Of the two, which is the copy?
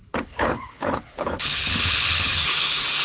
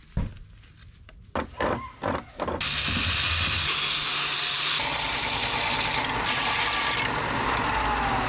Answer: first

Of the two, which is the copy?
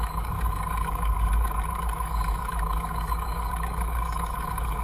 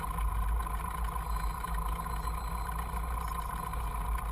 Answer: first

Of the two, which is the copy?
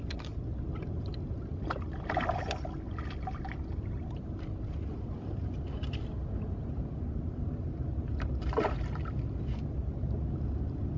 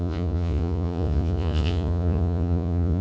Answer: second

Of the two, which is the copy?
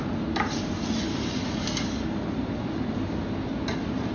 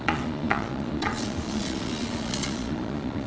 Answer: second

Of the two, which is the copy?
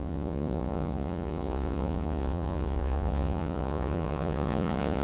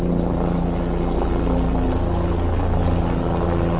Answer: first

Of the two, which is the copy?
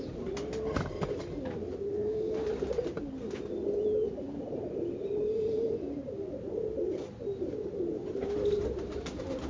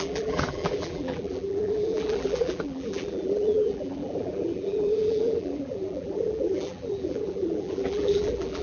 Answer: second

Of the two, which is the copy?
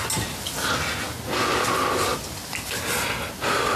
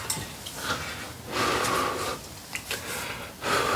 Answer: second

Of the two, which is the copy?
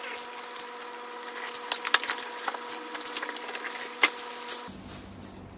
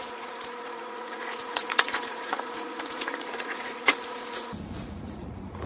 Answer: second